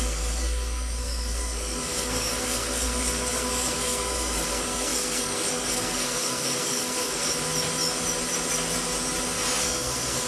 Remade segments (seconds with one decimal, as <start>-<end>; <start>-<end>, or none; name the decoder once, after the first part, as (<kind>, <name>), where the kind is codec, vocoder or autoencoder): 0.0-7.3 (codec, SNAC); 9.6-10.3